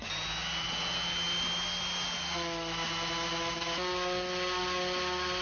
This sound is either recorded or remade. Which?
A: recorded